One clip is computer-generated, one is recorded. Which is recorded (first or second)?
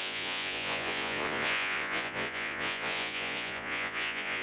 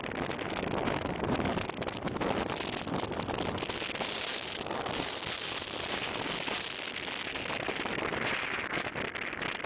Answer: second